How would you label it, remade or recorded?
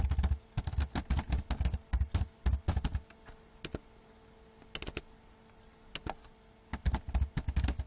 recorded